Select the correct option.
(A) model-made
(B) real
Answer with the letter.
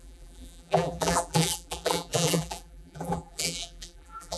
A